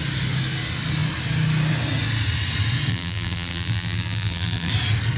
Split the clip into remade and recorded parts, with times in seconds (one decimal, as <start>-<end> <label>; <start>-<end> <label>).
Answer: 0.0-2.9 recorded; 2.9-4.7 remade; 4.7-5.2 recorded